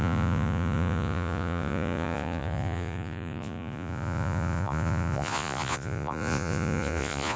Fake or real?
fake